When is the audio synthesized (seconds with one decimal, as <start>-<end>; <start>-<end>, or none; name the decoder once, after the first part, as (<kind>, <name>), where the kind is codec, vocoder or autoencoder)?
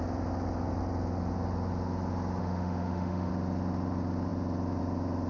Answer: 2.4-3.3 (autoencoder, DAC-VAE)